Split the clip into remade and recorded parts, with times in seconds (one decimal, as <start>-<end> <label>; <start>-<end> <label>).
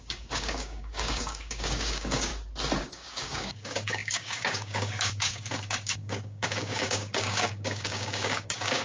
0.0-2.3 remade; 2.3-2.8 recorded; 2.8-8.8 remade